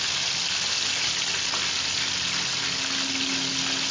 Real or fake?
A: real